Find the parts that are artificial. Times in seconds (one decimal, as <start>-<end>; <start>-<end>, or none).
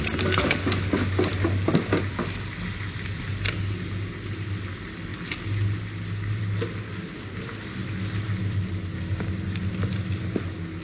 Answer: none